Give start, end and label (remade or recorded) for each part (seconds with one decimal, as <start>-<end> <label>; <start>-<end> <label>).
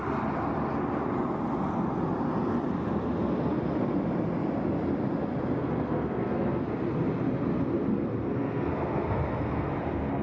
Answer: 0.0-5.6 recorded; 5.6-6.6 remade; 6.6-7.9 recorded; 7.9-9.7 remade; 9.7-10.2 recorded